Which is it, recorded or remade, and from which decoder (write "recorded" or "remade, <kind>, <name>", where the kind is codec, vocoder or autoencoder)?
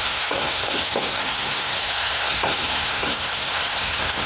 remade, codec, SNAC